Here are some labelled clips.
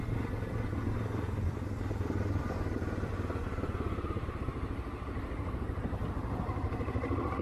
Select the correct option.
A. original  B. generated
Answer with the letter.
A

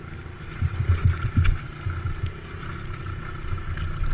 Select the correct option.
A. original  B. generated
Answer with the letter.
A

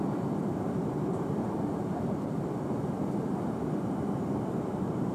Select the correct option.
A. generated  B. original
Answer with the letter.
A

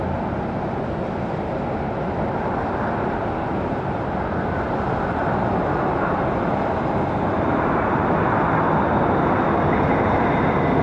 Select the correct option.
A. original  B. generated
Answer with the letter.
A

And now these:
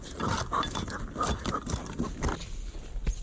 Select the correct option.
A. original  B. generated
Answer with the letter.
A